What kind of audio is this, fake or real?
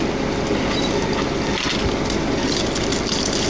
real